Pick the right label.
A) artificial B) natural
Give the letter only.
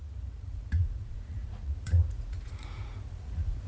A